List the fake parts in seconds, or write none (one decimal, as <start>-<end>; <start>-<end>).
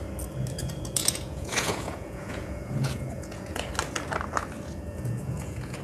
0.6-3.7; 4.9-5.8